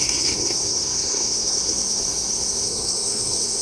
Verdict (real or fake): fake